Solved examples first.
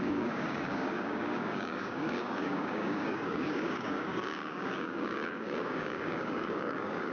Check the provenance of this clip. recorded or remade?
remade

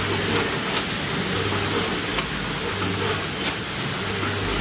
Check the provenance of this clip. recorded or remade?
recorded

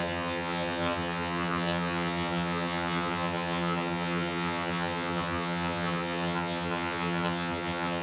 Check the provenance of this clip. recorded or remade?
remade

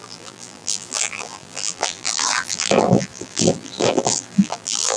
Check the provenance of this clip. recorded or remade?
remade